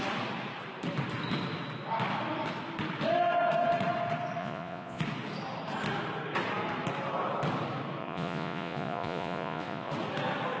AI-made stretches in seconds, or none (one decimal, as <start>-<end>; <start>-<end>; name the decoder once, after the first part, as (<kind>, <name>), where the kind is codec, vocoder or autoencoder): 4.4-5.0 (vocoder, Vocos); 8.0-9.9